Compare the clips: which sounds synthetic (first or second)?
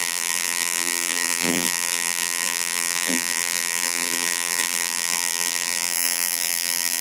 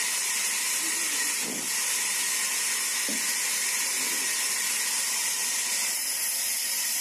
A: first